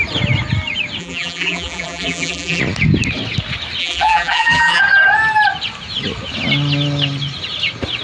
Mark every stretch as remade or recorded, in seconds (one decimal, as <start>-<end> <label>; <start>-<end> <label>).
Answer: 0.0-1.0 recorded; 1.0-2.6 remade; 2.6-3.8 recorded; 3.8-4.8 remade; 4.8-8.0 recorded